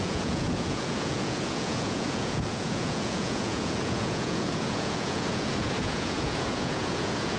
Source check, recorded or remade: remade